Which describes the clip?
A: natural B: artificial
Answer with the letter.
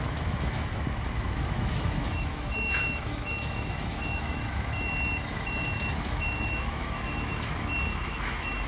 B